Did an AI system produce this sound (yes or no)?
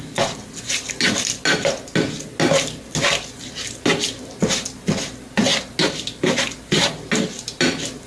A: no